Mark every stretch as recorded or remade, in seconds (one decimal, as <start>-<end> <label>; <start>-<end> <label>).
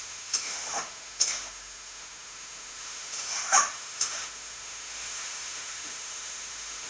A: 0.0-6.9 remade